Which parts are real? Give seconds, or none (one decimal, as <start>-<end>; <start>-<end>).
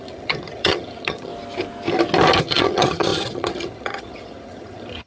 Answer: 1.3-2.4